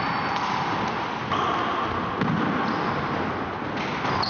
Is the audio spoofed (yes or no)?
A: no